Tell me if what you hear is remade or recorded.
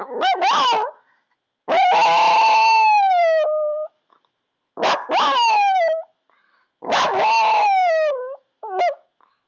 remade